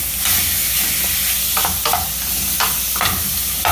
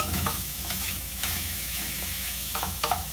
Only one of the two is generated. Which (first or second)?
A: second